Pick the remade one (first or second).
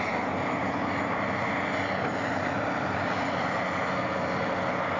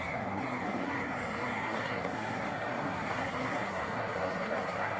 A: second